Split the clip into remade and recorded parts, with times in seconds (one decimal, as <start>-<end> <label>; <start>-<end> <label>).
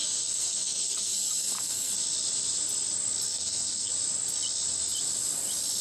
0.0-1.9 remade; 1.9-3.3 recorded; 3.3-3.9 remade; 3.9-5.8 recorded